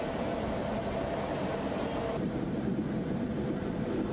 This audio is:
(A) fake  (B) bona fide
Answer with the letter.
B